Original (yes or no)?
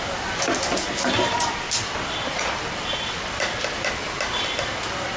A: yes